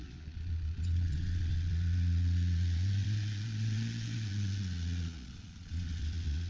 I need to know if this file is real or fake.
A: fake